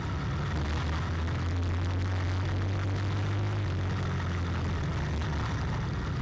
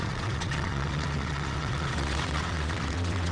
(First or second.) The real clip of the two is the first